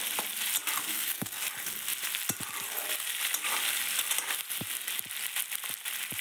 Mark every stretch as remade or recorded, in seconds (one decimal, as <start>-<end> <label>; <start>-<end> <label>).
0.0-0.9 recorded; 0.9-1.4 remade; 1.4-6.2 recorded